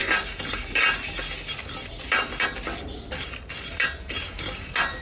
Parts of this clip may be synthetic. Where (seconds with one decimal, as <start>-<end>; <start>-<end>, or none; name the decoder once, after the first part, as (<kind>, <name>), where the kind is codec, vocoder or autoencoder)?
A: none